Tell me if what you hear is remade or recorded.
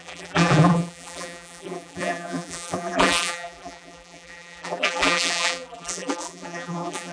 remade